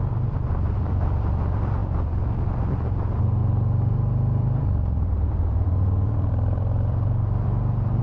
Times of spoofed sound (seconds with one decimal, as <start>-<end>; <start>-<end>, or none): 0.0-8.0

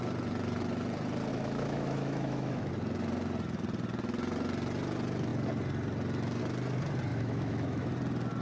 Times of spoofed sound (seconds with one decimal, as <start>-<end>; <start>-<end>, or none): 1.3-2.7; 7.1-7.9

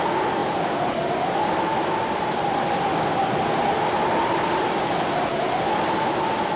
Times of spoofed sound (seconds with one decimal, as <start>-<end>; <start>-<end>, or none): none

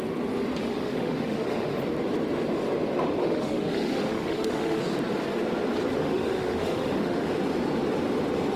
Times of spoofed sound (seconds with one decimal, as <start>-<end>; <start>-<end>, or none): 0.6-1.8; 3.2-4.8; 6.0-7.3

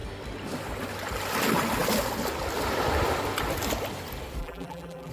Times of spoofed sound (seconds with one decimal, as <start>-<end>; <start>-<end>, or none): 4.4-5.1

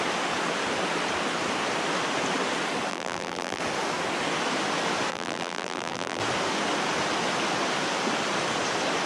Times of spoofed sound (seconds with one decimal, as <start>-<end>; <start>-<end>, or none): 2.9-3.6; 5.1-6.2

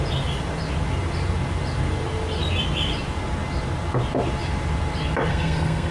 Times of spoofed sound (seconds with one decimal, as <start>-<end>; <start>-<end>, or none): 5.3-5.9

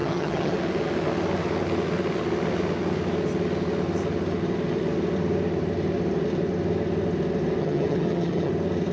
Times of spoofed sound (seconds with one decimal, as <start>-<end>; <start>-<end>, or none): 0.0-0.5; 7.6-8.5